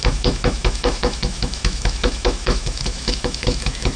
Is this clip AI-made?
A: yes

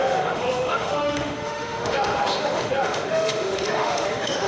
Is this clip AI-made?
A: yes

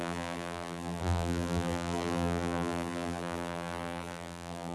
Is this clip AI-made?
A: yes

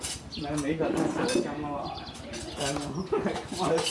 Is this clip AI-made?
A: no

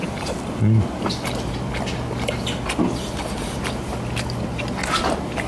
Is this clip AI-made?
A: no